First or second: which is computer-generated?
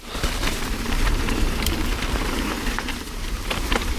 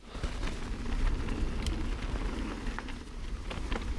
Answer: first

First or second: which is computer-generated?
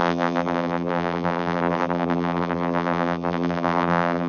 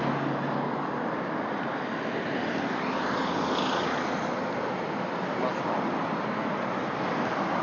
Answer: first